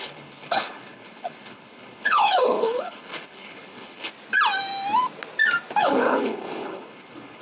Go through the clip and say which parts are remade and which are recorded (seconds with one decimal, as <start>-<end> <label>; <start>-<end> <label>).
0.0-4.1 remade; 4.1-5.8 recorded; 5.8-7.4 remade